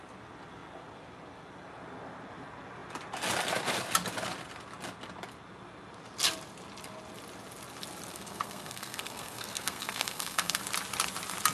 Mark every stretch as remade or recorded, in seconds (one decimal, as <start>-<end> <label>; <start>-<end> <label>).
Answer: 0.0-8.1 recorded; 8.1-10.6 remade; 10.6-11.5 recorded